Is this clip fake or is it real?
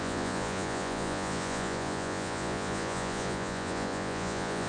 fake